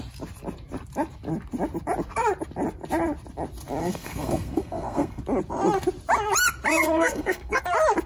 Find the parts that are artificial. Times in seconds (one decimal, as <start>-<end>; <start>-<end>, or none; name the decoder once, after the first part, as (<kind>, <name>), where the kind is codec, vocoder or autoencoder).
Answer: 3.8-5.2 (codec, SNAC); 6.7-7.6